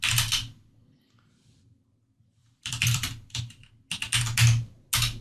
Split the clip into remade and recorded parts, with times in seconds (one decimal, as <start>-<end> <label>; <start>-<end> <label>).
0.0-2.4 recorded; 2.4-3.7 remade; 3.7-5.2 recorded